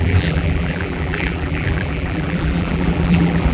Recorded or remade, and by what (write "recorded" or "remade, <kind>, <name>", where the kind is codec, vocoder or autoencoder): remade, vocoder, BigVGAN v2